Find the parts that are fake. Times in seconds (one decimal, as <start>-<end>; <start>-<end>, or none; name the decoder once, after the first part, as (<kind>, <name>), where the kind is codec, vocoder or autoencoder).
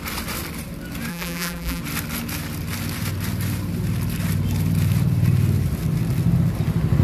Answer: 1.1-1.8 (vocoder, BigVGAN v2)